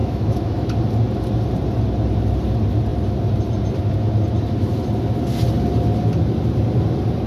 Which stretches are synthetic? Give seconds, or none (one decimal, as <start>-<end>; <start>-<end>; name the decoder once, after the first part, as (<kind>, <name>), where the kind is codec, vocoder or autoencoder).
0.0-0.7 (autoencoder, DAC-VAE)